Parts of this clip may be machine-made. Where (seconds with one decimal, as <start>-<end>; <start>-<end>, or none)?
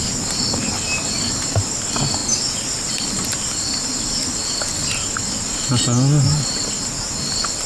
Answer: none